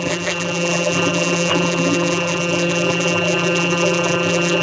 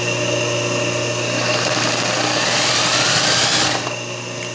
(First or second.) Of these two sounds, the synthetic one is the first